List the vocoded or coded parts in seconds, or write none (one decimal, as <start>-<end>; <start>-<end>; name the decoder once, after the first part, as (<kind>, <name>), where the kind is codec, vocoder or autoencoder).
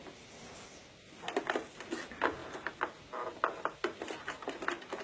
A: none